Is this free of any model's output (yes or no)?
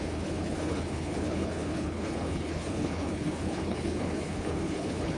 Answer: no